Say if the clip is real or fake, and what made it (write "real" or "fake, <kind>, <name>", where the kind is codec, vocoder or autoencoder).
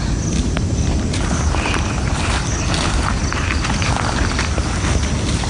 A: real